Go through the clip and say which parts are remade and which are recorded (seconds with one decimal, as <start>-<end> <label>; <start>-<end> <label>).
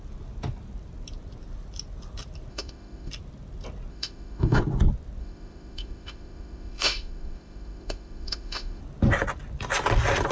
0.0-2.5 recorded; 2.5-3.1 remade; 3.1-3.9 recorded; 3.9-4.6 remade; 4.6-5.2 recorded; 5.2-8.8 remade; 8.8-10.3 recorded